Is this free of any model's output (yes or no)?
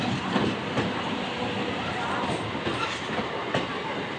yes